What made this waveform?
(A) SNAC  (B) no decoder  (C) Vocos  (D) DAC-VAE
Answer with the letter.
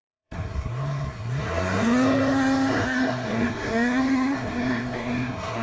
A